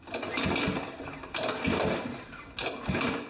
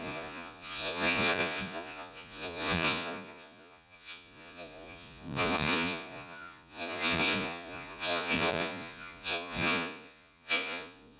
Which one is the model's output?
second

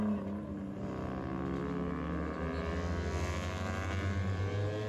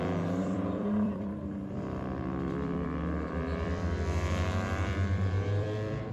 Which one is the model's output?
second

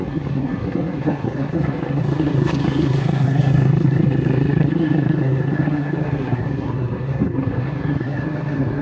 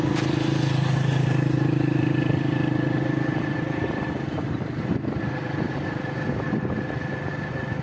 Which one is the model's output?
first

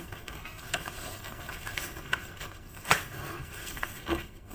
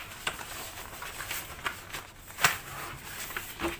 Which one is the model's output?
first